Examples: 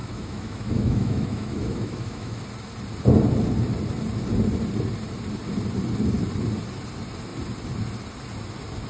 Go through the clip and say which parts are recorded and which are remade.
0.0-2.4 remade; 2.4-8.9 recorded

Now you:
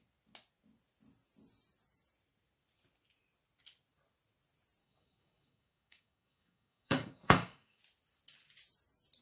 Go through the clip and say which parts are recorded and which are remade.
0.0-4.8 recorded; 4.8-7.8 remade; 7.8-9.2 recorded

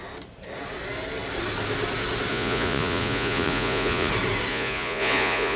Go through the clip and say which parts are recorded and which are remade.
0.0-2.3 recorded; 2.3-4.1 remade; 4.1-4.5 recorded; 4.5-5.6 remade

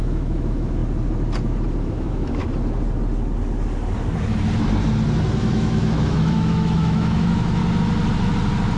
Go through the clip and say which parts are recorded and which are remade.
0.0-0.8 remade; 0.8-1.8 recorded; 1.8-2.4 remade; 2.4-5.4 recorded; 5.4-7.6 remade; 7.6-8.8 recorded

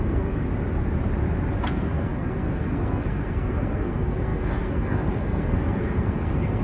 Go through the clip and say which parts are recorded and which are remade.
0.0-0.5 remade; 0.5-1.6 recorded; 1.6-6.6 remade

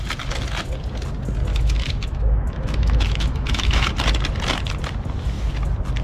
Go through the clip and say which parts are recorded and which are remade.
0.0-1.5 recorded; 1.5-3.9 remade; 3.9-6.0 recorded